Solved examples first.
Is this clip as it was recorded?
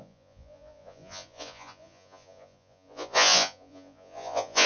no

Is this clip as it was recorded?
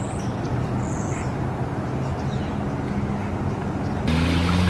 yes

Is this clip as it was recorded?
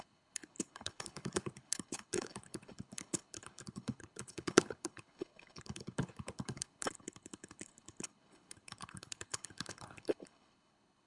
no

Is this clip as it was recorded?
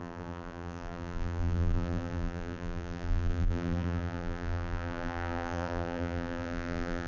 no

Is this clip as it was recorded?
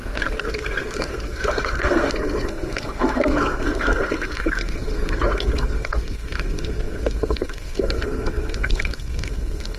no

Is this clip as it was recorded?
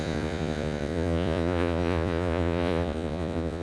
no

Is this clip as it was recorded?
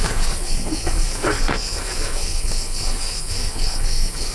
no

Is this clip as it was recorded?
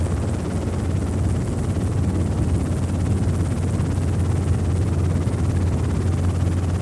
yes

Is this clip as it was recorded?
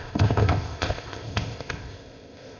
no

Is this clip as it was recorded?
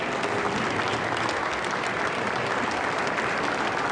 yes